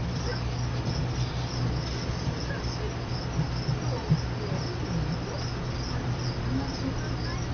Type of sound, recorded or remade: recorded